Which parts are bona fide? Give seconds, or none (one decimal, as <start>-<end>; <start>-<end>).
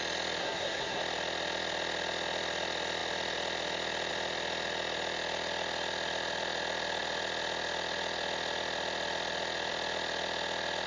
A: 0.0-0.4; 1.0-10.9